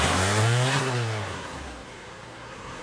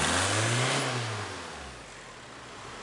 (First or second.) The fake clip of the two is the first